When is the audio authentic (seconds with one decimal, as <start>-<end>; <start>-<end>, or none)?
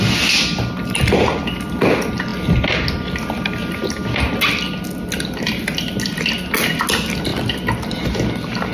0.0-8.7